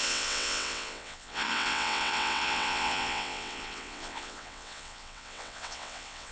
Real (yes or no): no